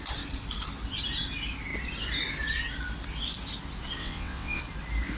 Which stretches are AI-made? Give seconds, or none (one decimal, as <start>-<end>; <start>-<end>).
4.0-4.6